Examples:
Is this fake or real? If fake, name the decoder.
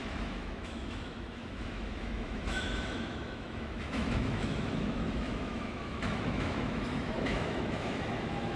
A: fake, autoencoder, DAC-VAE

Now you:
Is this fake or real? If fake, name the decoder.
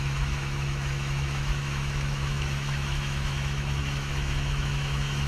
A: fake, autoencoder, DAC-VAE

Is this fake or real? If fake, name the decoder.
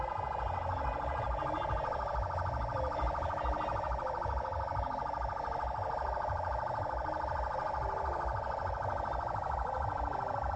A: real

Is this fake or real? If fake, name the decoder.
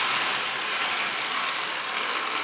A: real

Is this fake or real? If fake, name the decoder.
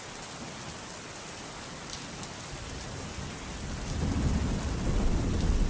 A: real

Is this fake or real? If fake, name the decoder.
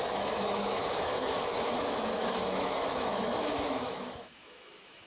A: fake, autoencoder, DAC-VAE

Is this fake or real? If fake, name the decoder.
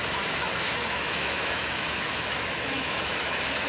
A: fake, autoencoder, DAC-VAE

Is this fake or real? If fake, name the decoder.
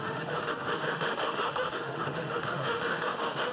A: fake, autoencoder, DAC-VAE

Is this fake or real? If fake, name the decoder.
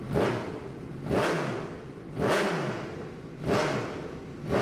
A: real